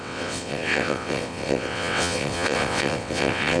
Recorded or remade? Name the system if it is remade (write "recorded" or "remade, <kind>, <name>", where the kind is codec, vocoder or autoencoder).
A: remade, vocoder, WaveNeXt